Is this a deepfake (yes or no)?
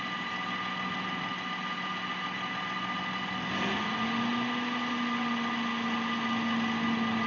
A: no